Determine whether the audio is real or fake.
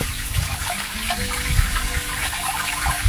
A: fake